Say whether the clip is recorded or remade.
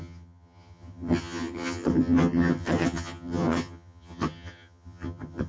remade